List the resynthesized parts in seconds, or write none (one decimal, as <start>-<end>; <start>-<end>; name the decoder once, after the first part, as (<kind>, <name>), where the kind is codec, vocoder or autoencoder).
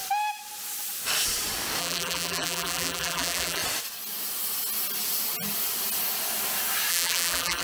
1.8-3.6 (vocoder, BigVGAN v2); 6.9-7.6